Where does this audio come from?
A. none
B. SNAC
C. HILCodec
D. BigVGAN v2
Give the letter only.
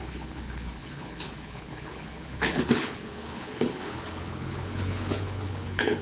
C